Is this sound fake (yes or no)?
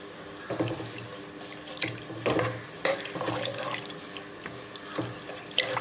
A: no